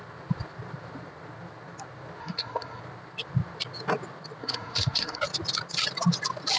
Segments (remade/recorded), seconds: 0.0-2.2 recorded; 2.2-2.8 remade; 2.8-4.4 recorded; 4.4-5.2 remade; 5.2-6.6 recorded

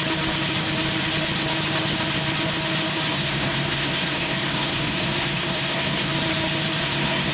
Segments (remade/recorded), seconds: 0.0-3.1 recorded; 3.1-6.1 remade; 6.1-6.8 recorded; 6.8-7.3 remade

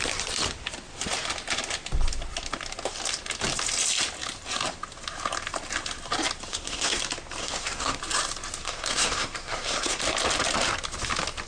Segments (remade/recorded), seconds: 0.0-6.5 recorded; 6.5-7.0 remade; 7.0-7.4 recorded; 7.4-8.0 remade; 8.0-8.6 recorded; 8.6-10.0 remade; 10.0-11.5 recorded